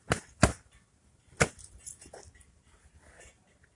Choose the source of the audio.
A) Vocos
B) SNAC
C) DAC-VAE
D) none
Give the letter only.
D